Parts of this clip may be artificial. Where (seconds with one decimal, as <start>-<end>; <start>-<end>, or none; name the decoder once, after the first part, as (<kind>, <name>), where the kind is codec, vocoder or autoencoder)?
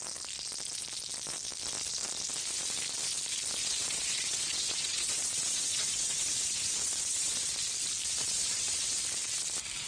3.6-7.5 (vocoder, WaveNeXt); 8.2-9.0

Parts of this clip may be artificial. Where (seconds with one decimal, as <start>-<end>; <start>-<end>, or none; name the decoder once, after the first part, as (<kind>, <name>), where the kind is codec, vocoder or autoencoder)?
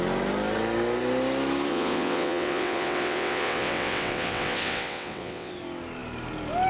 1.7-5.5 (vocoder, WaveNeXt)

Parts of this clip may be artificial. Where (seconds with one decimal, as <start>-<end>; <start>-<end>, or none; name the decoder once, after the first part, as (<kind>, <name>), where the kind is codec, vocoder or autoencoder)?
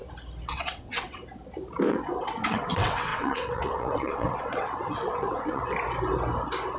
0.5-1.2 (vocoder, WaveNeXt); 1.9-5.7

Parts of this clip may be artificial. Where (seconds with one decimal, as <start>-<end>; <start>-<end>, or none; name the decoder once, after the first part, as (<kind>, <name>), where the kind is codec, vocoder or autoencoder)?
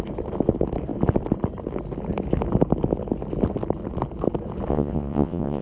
4.7-5.6 (vocoder, WaveNeXt)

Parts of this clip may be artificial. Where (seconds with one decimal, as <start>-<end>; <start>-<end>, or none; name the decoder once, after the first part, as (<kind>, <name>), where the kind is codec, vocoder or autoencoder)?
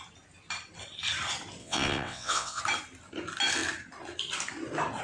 1.6-2.6 (vocoder, WaveNeXt)